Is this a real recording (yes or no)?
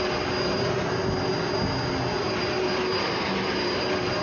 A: yes